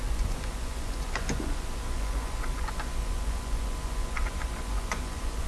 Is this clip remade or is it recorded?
remade